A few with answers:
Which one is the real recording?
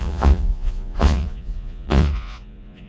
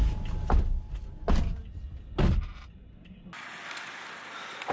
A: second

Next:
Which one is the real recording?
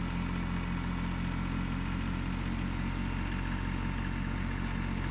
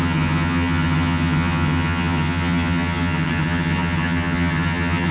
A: first